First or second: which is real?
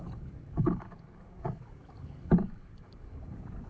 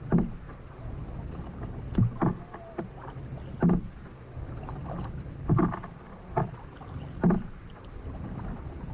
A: second